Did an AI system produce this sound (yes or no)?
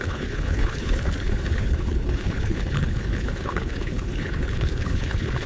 yes